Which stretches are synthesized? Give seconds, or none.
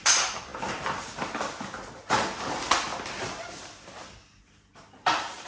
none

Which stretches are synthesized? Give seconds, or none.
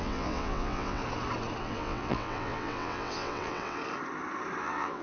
0.0-1.0 (vocoder, WaveNeXt); 1.6-3.8; 4.6-5.0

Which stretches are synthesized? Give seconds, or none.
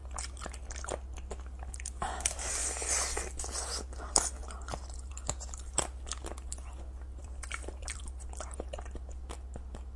7.2-8.0 (vocoder, BigVGAN v2)